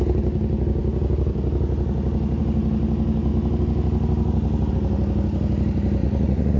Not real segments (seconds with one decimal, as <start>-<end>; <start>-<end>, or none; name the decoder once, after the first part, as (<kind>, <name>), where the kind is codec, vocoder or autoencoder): 6.0-6.6 (vocoder, Vocos)